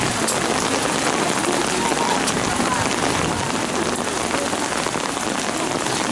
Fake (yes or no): no